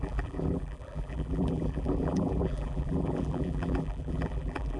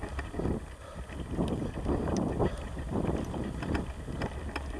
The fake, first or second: first